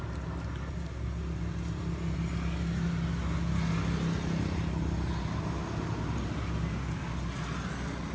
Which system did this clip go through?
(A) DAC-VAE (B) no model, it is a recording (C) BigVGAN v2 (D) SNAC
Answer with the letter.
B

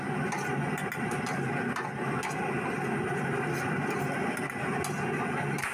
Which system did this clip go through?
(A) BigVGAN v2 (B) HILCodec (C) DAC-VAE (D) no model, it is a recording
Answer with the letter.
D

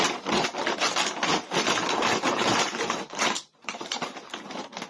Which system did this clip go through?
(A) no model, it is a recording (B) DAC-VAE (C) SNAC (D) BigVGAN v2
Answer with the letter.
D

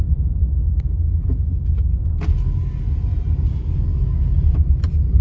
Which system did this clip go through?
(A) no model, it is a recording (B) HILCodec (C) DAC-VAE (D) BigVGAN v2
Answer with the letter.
A